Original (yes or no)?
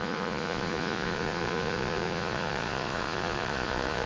no